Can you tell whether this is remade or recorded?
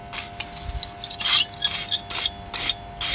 recorded